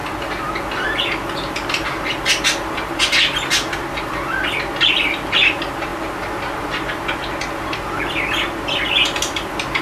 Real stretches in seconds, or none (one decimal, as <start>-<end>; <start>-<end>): 0.0-9.8